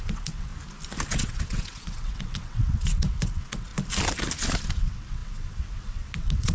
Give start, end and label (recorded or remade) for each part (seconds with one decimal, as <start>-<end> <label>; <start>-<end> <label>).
0.0-0.5 remade; 0.5-1.1 recorded; 1.1-3.7 remade; 3.7-4.8 recorded; 4.8-6.5 remade